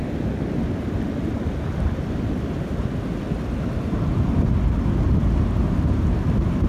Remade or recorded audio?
recorded